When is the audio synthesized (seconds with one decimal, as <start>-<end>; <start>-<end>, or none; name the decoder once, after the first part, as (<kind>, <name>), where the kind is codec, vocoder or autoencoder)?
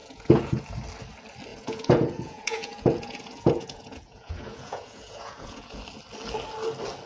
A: 0.0-0.6 (vocoder, Vocos); 1.5-5.8